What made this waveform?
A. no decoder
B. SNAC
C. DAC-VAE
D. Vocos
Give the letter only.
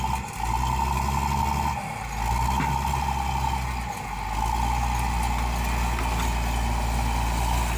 A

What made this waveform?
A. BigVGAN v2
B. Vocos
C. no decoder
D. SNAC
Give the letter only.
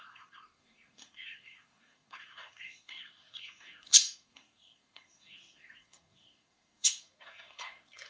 D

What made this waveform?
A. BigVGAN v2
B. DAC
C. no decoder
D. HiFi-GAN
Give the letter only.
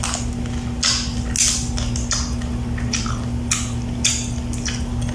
C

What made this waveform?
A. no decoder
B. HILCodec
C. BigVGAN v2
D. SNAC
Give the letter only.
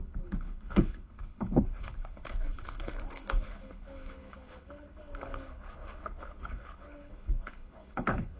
B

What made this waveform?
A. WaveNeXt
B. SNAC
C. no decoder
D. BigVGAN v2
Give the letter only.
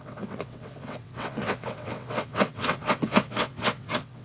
A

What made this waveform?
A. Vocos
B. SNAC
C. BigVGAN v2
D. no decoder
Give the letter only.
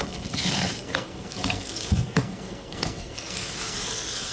B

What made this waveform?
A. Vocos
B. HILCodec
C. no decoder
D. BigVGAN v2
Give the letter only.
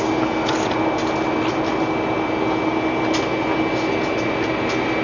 C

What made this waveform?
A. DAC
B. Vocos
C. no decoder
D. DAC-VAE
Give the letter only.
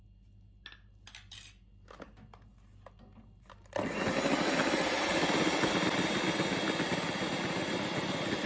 C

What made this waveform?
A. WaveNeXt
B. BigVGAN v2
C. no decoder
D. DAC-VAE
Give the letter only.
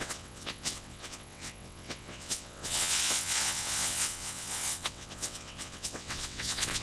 A